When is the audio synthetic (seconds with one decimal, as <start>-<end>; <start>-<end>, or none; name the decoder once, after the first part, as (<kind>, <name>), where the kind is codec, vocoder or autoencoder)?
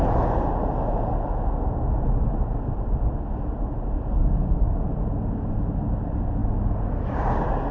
none